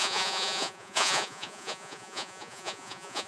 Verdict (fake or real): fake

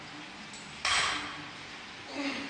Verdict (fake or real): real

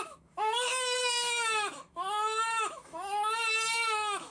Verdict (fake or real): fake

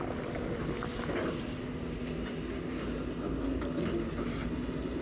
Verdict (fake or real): real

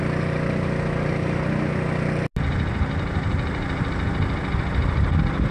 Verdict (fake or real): real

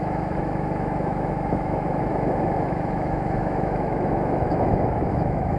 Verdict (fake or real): fake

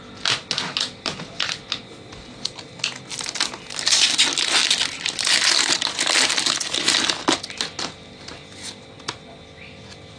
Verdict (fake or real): real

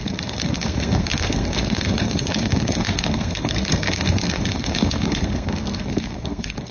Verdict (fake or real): fake